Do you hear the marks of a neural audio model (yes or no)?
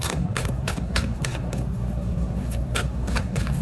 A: yes